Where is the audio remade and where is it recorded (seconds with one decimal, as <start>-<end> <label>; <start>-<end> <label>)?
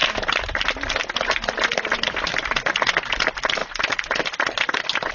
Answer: 0.0-5.1 recorded